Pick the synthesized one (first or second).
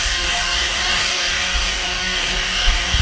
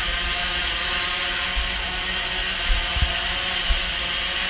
first